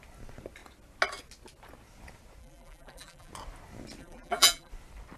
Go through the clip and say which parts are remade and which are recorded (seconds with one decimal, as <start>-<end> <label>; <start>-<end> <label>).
0.0-2.4 recorded; 2.4-3.3 remade; 3.3-4.0 recorded; 4.0-4.7 remade; 4.7-5.2 recorded